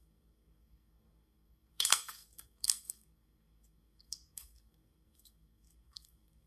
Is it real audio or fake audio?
fake